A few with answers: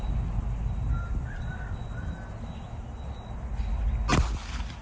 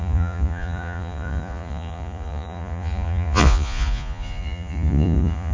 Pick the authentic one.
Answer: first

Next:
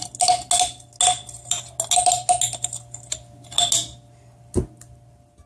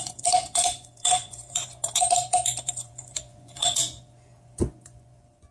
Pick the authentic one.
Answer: first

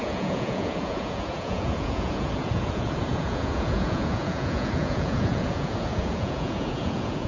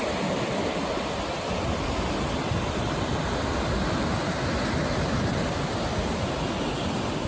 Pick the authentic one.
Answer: second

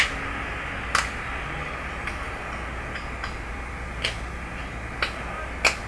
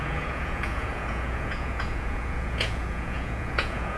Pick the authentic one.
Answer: first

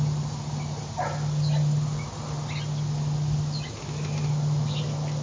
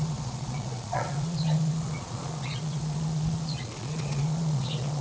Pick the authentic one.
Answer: first